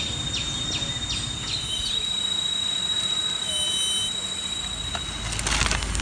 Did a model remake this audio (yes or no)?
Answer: no